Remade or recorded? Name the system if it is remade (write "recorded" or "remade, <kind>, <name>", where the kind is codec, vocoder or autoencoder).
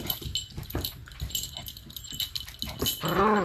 recorded